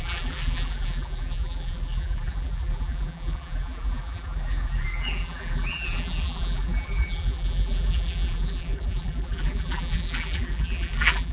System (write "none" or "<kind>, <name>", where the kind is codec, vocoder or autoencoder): vocoder, BigVGAN v2